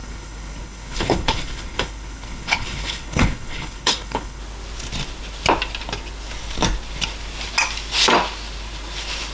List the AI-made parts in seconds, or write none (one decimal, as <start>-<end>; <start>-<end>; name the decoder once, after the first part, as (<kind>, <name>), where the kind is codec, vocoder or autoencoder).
0.0-4.4 (codec, HILCodec)